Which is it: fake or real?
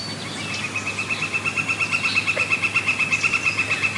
real